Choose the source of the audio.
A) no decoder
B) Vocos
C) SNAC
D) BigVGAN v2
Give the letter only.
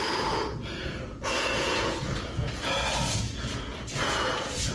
B